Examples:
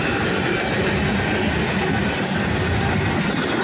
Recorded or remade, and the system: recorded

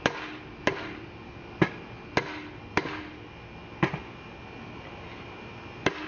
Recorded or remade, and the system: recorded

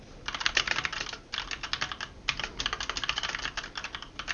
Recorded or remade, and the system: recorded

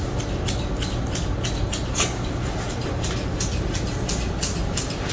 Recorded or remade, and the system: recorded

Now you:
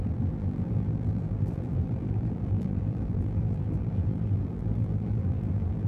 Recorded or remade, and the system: remade, vocoder, BigVGAN v2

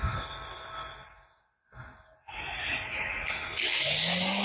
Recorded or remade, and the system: recorded